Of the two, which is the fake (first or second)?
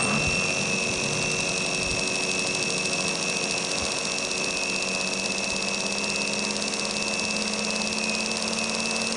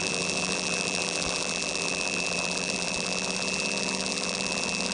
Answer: second